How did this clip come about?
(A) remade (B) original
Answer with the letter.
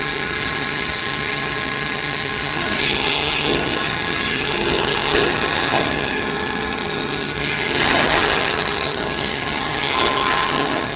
A